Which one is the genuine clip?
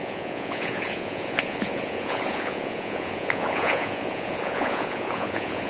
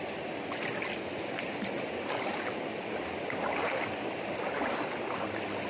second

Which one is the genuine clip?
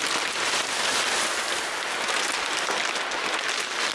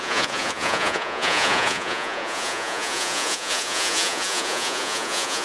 first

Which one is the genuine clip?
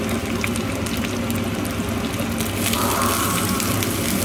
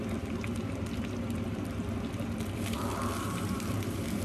first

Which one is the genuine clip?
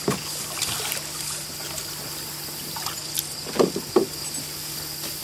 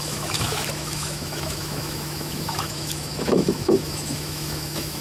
first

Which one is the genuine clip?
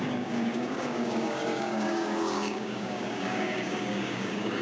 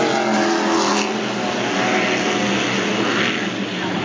second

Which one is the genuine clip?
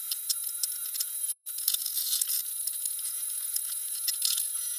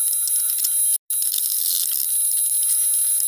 second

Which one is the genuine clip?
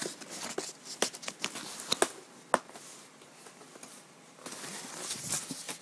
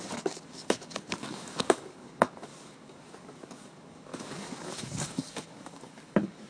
first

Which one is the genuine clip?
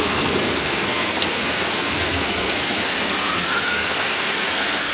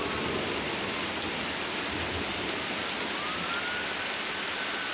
second